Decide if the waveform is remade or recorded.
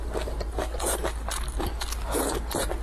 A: recorded